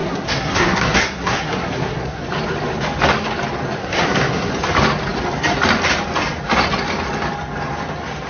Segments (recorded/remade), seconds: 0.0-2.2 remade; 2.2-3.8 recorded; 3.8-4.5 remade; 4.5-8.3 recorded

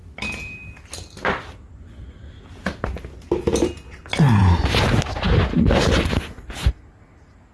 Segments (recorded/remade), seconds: 0.0-7.5 recorded